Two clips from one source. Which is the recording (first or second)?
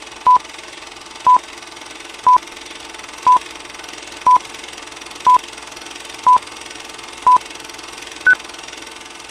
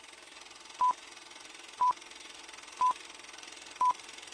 first